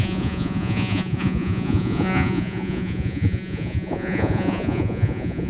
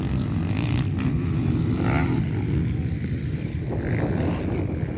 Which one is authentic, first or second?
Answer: second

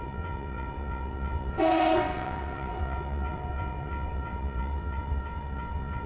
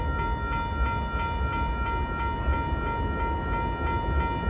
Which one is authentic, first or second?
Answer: second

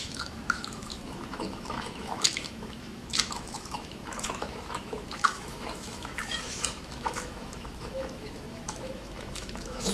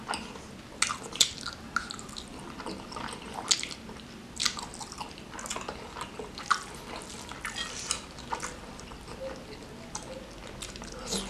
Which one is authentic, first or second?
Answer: second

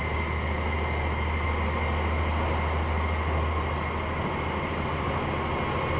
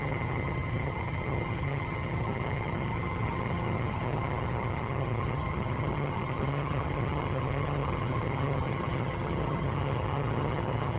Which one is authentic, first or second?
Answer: first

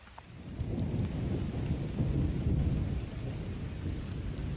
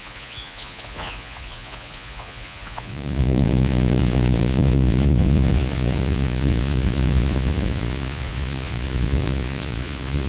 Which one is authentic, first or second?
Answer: first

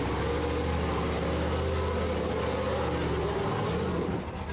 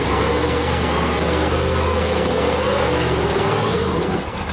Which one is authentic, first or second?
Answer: first